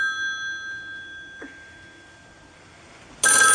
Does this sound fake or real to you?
real